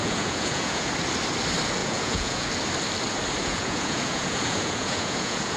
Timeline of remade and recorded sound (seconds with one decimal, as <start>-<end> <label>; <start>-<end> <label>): 0.0-0.9 remade; 0.9-1.8 recorded; 1.8-2.5 remade; 2.5-3.4 recorded; 3.4-5.6 remade